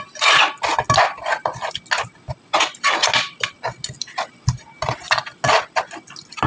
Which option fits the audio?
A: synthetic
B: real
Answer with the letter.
B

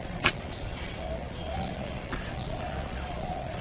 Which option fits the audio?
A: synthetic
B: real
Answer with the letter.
A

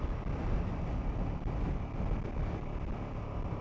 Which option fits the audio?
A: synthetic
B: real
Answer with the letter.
B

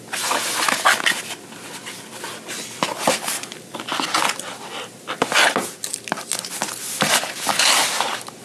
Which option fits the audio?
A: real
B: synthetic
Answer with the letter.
A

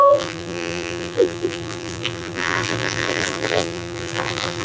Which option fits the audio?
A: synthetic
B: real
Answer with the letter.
A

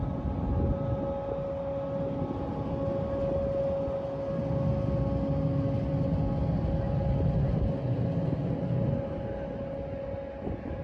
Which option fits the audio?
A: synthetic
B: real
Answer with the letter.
B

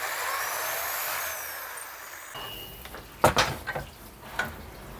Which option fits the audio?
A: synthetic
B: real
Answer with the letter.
B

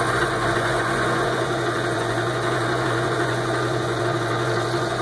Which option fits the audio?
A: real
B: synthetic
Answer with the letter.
B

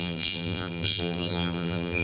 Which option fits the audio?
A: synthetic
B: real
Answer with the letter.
A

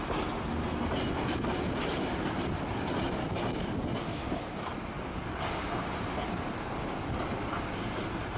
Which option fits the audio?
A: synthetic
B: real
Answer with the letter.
B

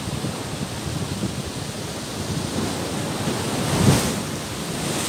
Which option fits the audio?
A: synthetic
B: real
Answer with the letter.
B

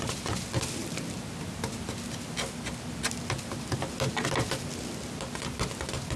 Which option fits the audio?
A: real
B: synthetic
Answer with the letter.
A